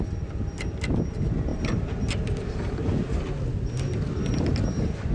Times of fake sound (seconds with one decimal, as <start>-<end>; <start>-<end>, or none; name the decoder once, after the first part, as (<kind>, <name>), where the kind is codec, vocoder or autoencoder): none